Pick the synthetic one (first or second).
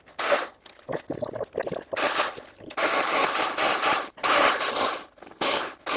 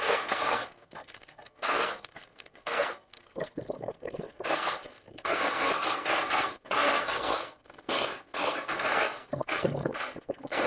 second